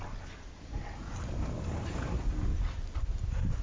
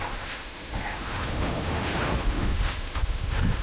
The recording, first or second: first